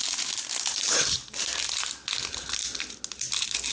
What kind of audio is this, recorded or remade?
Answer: recorded